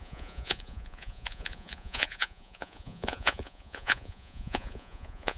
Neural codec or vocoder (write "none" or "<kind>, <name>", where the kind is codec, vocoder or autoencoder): vocoder, Vocos